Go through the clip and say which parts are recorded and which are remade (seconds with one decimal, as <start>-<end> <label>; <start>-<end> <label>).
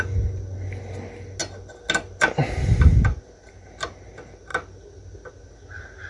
0.0-6.1 recorded